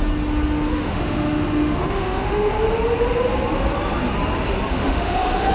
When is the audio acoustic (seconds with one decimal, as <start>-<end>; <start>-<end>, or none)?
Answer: 0.0-0.7; 2.5-4.7